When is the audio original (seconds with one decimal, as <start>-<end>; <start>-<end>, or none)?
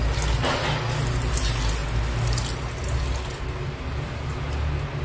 0.0-5.0